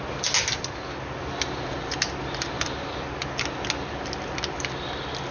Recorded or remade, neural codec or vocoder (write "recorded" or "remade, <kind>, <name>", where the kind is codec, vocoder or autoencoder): recorded